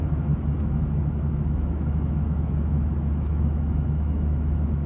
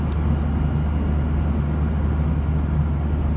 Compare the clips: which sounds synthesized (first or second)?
first